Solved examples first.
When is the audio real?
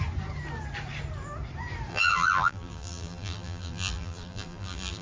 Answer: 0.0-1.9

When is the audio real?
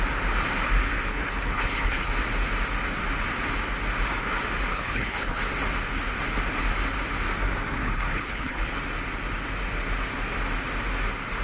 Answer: 0.0-1.1; 2.1-4.7; 5.5-7.8; 8.6-11.4